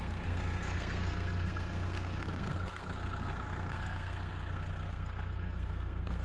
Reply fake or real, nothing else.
fake